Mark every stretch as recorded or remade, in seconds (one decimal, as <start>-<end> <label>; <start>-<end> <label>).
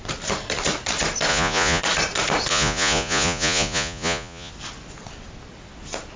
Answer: 0.0-1.3 recorded; 1.3-1.8 remade; 1.8-2.5 recorded; 2.5-4.5 remade; 4.5-6.2 recorded